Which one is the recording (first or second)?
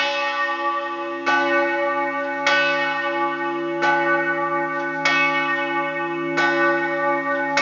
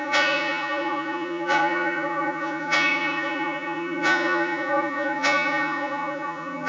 first